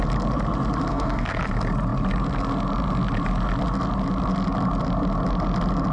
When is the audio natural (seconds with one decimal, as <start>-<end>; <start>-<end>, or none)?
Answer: 0.0-0.9; 1.4-5.9